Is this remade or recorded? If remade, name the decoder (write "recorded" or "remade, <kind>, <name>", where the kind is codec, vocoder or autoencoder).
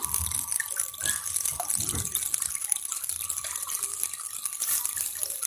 recorded